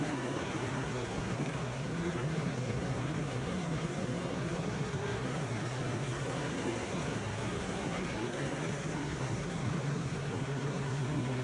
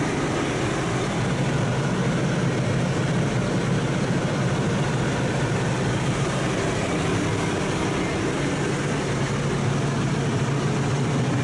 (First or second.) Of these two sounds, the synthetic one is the first